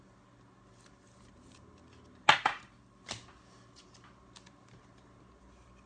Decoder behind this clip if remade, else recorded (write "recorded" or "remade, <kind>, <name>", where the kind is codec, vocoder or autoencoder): recorded